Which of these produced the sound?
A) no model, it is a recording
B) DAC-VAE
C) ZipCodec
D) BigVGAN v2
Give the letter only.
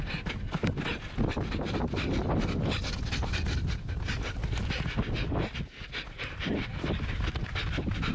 A